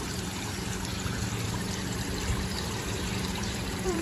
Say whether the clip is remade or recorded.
remade